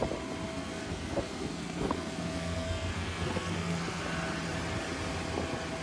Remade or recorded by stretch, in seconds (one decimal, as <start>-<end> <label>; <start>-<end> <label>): 0.0-0.5 recorded; 0.5-4.0 remade; 4.0-5.8 recorded